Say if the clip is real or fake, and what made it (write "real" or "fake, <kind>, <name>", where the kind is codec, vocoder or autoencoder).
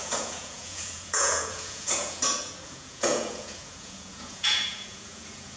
fake, vocoder, Vocos